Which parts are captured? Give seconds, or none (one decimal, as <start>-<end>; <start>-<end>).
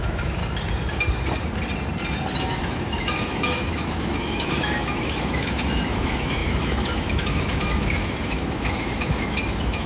0.4-2.6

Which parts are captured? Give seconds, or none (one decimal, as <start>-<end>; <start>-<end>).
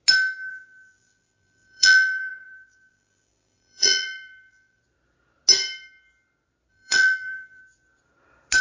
0.0-0.5; 4.8-6.7; 7.6-8.6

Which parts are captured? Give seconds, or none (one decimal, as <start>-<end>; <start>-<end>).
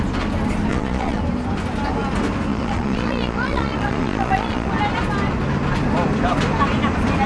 0.0-0.7; 1.2-2.5; 4.7-7.3